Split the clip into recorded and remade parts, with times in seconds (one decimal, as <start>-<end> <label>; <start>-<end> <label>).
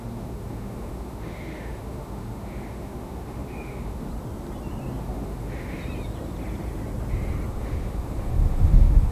0.0-4.1 remade; 4.1-5.0 recorded; 5.0-5.8 remade; 5.8-7.5 recorded; 7.5-9.1 remade